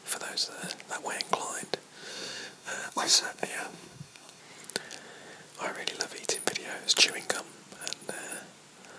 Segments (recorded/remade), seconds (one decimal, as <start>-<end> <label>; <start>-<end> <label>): 0.0-2.1 recorded; 2.1-4.4 remade; 4.4-9.0 recorded